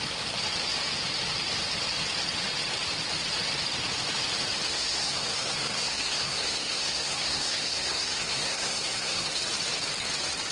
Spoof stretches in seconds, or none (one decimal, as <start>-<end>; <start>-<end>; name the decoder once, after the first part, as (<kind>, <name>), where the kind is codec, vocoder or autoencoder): 4.7-9.4 (codec, SNAC)